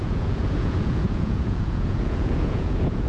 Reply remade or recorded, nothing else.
remade